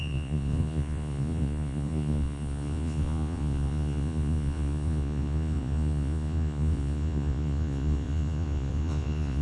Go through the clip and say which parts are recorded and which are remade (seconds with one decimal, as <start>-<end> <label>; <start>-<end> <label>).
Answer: 0.0-9.4 remade